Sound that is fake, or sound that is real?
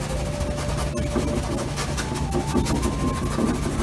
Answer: real